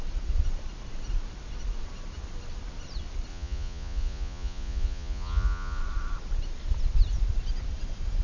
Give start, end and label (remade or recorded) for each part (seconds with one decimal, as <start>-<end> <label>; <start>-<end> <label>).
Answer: 0.0-3.3 recorded; 3.3-5.8 remade; 5.8-8.2 recorded